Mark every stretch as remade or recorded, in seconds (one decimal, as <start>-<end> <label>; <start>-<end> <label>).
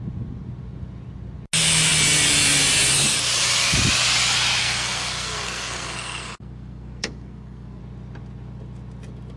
0.0-4.6 recorded; 4.6-7.8 remade; 7.8-9.4 recorded